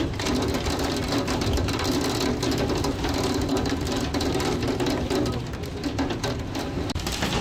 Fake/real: real